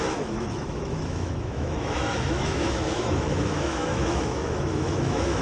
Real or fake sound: fake